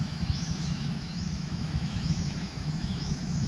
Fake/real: fake